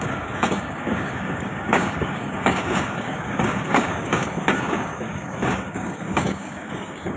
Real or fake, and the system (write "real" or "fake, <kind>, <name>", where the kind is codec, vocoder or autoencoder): fake, codec, DAC